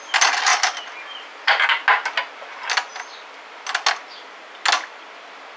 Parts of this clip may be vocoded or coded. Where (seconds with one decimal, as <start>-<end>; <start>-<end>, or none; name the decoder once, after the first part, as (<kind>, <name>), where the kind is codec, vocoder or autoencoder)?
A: none